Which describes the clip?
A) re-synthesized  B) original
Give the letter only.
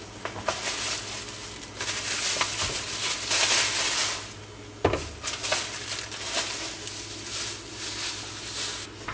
B